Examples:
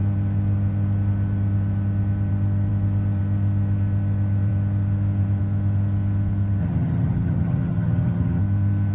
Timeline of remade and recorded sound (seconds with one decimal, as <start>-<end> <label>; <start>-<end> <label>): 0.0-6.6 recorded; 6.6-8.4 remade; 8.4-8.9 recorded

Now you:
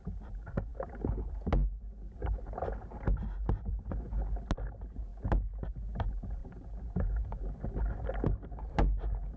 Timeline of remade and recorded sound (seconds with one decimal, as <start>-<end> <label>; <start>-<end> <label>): 0.0-6.4 recorded; 6.4-7.4 remade; 7.4-9.4 recorded

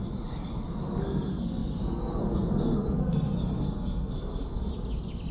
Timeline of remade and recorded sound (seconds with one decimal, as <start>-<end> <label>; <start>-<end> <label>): 0.0-4.7 remade; 4.7-5.3 recorded